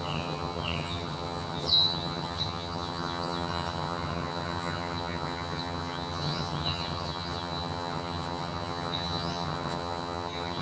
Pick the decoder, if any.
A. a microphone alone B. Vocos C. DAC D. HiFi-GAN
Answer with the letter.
D